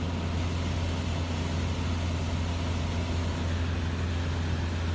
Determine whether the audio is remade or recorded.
recorded